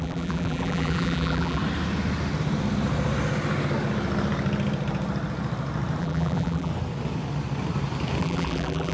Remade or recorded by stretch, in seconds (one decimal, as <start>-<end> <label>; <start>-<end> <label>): 0.0-1.6 remade; 1.6-6.0 recorded; 6.0-6.7 remade; 6.7-8.2 recorded; 8.2-8.9 remade